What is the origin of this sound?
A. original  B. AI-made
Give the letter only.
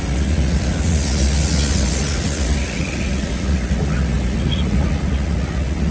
B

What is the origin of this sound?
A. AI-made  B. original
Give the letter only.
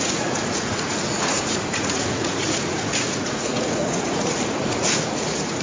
A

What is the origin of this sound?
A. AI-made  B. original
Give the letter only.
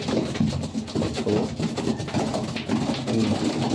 B